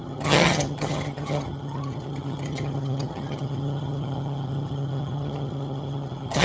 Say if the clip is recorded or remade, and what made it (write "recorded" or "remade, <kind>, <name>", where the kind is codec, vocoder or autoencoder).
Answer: remade, vocoder, HiFi-GAN